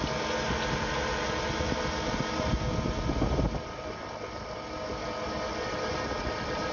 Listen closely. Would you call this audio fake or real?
real